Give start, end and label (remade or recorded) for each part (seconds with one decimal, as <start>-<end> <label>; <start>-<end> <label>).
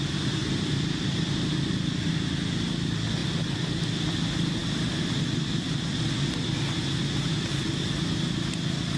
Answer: 0.0-9.0 recorded